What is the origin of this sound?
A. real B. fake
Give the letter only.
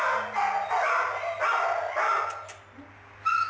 A